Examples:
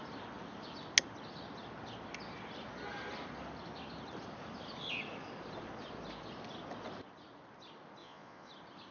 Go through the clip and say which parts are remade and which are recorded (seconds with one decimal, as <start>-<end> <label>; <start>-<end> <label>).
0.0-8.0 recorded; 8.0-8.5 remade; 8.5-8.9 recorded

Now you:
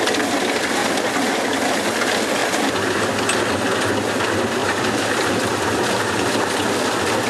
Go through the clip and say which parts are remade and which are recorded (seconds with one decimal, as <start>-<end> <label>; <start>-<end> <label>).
0.0-2.4 recorded; 2.4-3.2 remade; 3.2-4.6 recorded; 4.6-5.3 remade; 5.3-7.3 recorded

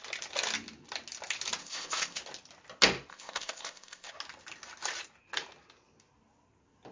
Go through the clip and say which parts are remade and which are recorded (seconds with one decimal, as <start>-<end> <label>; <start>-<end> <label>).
0.0-1.6 recorded; 1.6-2.2 remade; 2.2-3.1 recorded; 3.1-4.1 remade; 4.1-6.9 recorded

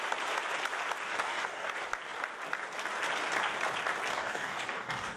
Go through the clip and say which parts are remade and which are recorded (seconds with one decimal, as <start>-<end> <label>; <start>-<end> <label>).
0.0-1.1 recorded; 1.1-1.7 remade; 1.7-4.1 recorded; 4.1-5.2 remade